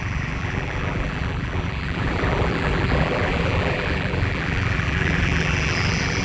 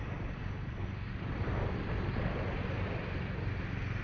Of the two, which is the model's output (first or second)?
first